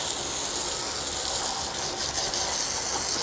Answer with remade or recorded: recorded